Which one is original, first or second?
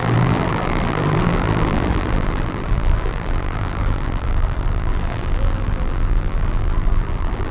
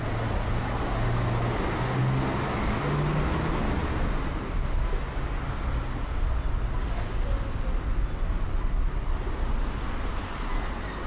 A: second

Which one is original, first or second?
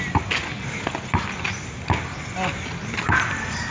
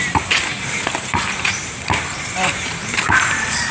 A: first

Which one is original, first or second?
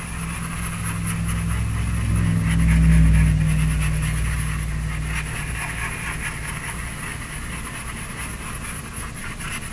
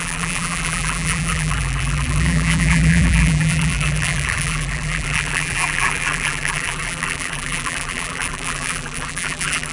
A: first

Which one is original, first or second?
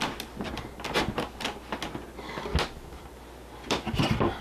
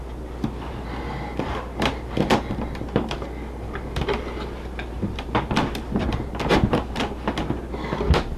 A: first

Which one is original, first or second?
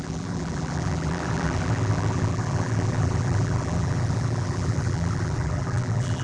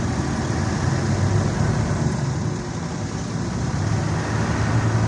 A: second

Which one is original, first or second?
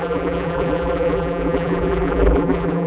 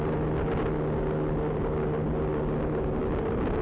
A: second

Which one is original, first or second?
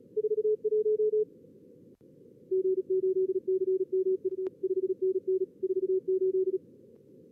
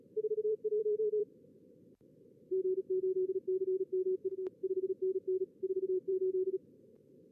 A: first